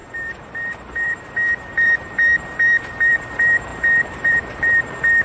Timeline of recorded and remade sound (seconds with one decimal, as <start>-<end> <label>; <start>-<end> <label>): 0.0-5.2 remade